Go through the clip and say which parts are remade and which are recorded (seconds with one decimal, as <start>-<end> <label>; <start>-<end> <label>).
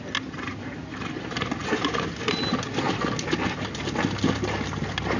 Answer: 0.0-5.2 recorded